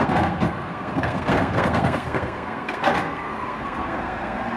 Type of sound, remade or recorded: remade